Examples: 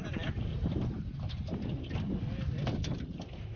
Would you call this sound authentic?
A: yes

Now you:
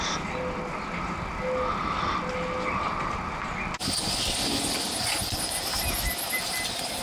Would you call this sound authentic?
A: yes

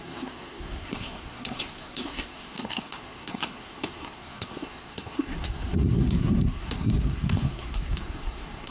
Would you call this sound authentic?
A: no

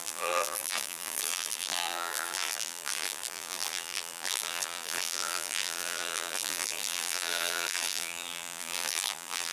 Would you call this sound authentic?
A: no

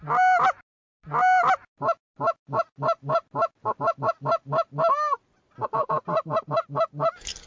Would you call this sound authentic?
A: yes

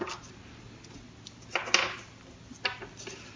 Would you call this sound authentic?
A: yes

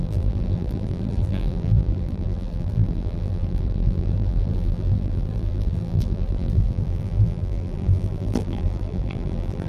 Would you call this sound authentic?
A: no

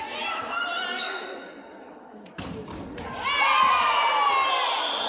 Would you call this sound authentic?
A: yes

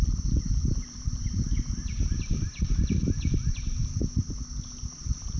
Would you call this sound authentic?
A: no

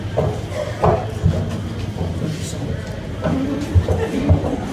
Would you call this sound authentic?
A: yes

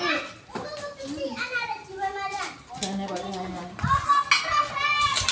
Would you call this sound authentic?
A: yes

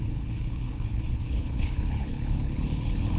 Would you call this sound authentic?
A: no